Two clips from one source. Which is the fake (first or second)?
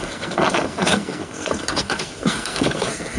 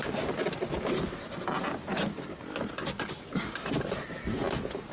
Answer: first